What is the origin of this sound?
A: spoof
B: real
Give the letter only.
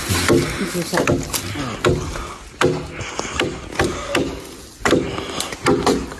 B